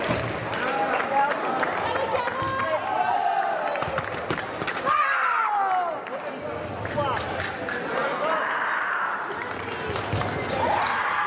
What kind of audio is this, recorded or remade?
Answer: recorded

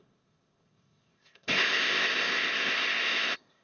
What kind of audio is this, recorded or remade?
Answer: remade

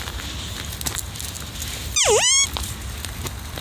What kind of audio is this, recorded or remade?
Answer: recorded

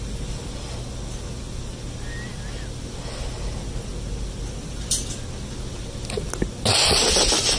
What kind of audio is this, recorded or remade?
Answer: recorded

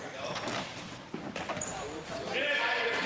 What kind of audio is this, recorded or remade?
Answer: remade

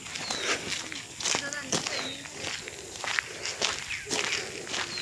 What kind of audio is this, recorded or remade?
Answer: recorded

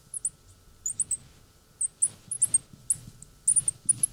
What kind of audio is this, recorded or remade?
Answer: recorded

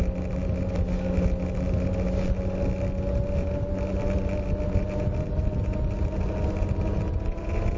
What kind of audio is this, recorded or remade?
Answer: recorded